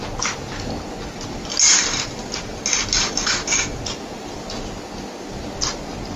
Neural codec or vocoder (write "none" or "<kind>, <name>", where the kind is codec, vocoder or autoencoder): none